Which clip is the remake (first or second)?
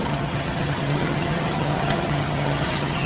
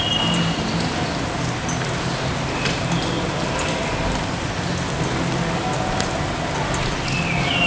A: first